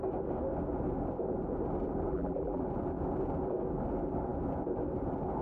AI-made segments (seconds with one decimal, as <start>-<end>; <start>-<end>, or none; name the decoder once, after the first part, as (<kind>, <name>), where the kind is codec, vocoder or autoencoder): 2.1-2.6 (vocoder, BigVGAN v2)